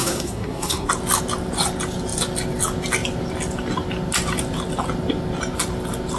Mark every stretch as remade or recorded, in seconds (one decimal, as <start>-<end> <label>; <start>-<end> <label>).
0.0-0.9 remade; 0.9-6.2 recorded